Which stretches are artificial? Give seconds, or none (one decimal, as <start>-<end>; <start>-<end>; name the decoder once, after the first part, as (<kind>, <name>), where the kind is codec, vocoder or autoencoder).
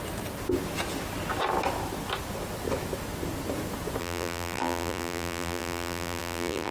4.0-6.7 (vocoder, BigVGAN v2)